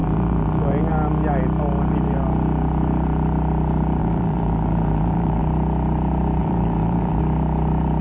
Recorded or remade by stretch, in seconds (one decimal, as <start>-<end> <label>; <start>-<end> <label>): 0.0-0.9 remade; 0.9-4.0 recorded; 4.0-5.4 remade; 5.4-6.4 recorded; 6.4-7.2 remade; 7.2-8.0 recorded

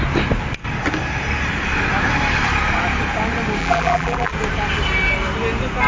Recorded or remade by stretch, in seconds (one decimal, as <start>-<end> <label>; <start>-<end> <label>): 0.0-3.6 recorded; 3.6-4.3 remade; 4.3-5.9 recorded

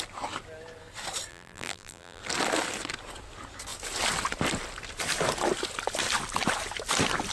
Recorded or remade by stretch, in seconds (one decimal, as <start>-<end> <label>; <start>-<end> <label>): 0.0-1.3 recorded; 1.3-2.2 remade; 2.2-7.3 recorded

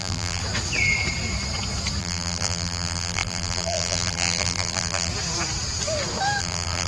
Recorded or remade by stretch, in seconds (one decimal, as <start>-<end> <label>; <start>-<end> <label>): 0.0-0.4 remade; 0.4-2.0 recorded; 2.0-5.1 remade; 5.1-6.4 recorded; 6.4-6.9 remade

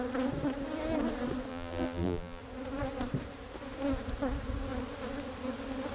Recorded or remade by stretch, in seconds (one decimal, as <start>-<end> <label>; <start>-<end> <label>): 0.0-1.5 recorded; 1.5-2.4 remade; 2.4-5.9 recorded

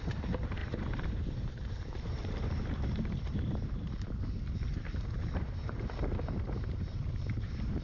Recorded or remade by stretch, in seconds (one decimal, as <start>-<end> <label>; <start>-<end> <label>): 0.0-7.8 remade

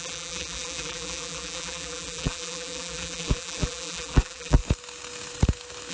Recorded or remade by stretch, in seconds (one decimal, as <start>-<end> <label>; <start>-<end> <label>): 0.0-4.6 remade; 4.6-5.9 recorded